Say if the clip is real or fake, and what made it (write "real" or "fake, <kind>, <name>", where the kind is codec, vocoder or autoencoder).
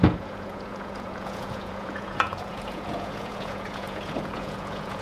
fake, vocoder, Vocos